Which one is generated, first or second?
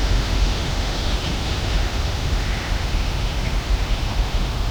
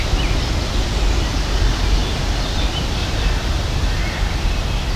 first